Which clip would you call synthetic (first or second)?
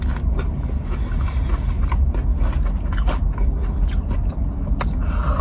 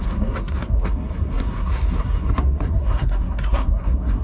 second